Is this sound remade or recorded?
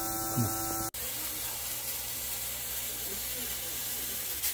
recorded